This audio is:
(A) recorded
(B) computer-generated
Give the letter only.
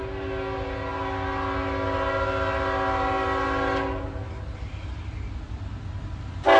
A